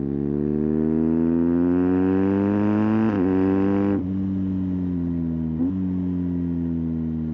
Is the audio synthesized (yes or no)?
no